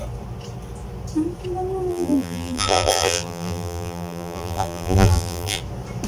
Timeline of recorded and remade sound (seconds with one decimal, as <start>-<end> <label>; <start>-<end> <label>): 0.0-1.9 recorded; 1.9-5.6 remade; 5.6-6.1 recorded

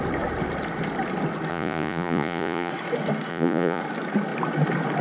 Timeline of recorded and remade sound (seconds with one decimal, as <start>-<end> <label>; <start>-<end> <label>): 0.0-1.5 recorded; 1.5-2.7 remade; 2.7-3.3 recorded; 3.3-3.8 remade; 3.8-5.0 recorded

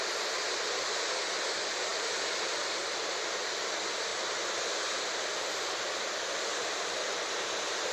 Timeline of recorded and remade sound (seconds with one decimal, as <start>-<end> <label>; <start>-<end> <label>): 0.0-4.1 recorded; 4.1-4.7 remade; 4.7-7.9 recorded